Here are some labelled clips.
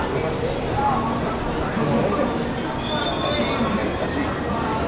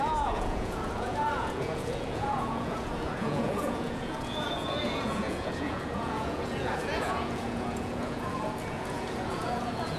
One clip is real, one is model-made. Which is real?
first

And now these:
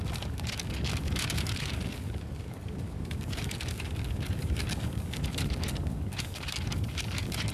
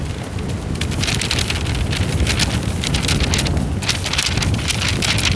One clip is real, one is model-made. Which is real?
second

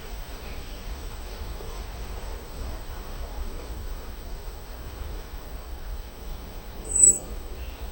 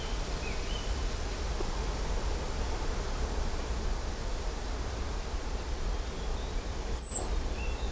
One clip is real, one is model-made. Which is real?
second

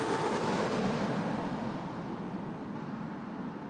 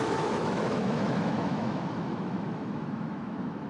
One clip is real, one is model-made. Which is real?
first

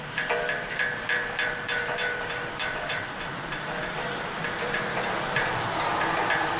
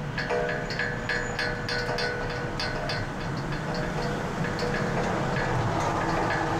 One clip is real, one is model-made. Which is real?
second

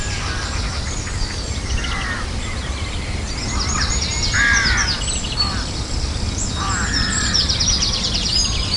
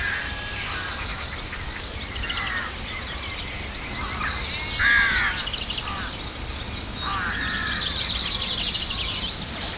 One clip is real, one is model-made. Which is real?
second